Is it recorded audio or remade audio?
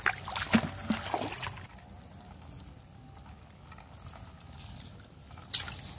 recorded